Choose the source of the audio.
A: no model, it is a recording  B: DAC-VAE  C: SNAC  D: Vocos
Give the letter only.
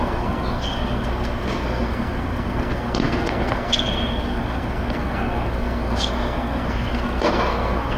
C